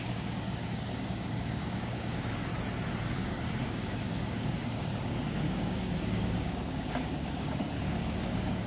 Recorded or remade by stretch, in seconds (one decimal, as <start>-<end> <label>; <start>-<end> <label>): 0.0-2.5 remade; 2.5-3.0 recorded; 3.0-8.7 remade